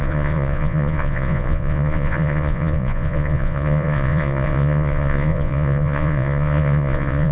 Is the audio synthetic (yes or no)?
yes